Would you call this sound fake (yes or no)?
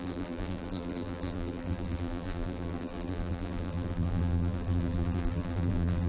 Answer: yes